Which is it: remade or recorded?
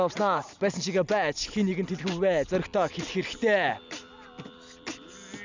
recorded